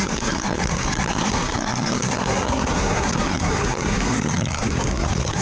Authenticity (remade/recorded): remade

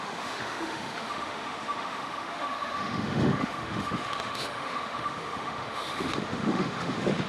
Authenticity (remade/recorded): remade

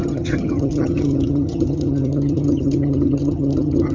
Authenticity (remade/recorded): remade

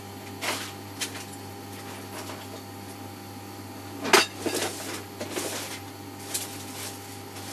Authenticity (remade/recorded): recorded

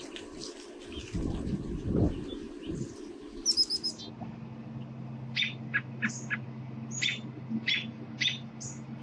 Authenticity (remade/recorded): recorded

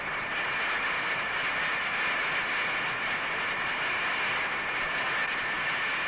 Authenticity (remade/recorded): recorded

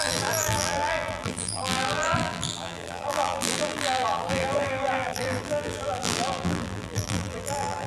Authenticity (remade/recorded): remade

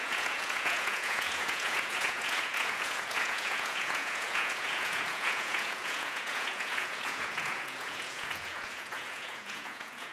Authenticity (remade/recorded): remade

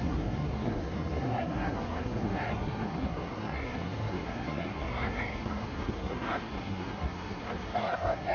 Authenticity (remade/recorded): remade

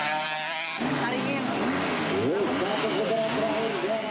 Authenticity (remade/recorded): recorded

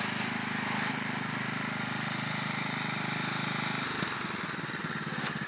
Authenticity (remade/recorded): recorded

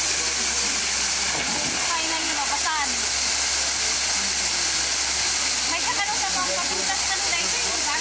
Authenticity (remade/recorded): recorded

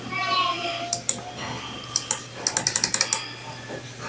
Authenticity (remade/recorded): recorded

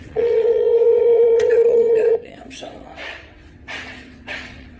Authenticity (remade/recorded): remade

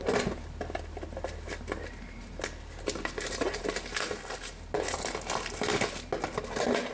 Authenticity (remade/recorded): recorded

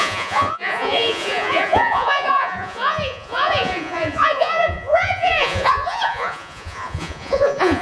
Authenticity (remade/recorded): remade